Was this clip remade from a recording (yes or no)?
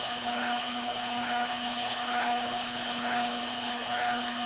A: yes